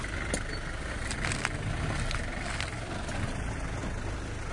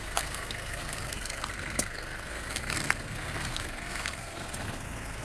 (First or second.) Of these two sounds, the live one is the first